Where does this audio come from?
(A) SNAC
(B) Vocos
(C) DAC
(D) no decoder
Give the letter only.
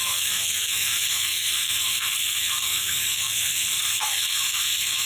A